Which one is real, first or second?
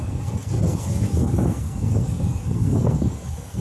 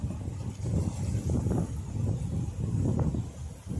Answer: second